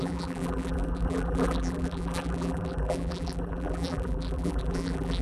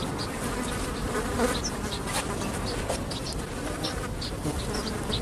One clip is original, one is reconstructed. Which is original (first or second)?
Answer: second